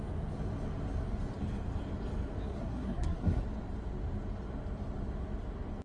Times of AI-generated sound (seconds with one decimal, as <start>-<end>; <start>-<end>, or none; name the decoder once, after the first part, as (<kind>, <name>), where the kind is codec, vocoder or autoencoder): 2.5-3.4 (codec, SNAC)